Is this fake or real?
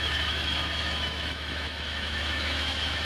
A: fake